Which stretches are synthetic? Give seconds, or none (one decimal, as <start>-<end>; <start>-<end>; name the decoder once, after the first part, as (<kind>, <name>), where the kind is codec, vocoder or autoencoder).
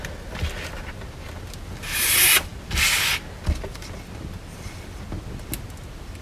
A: none